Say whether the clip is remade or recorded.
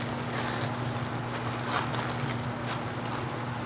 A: recorded